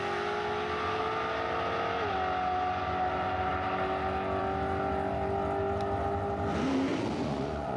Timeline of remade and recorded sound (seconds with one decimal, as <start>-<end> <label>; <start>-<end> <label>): 0.0-6.9 recorded; 6.9-7.8 remade